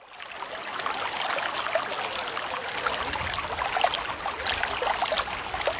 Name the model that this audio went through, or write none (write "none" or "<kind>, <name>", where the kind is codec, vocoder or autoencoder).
none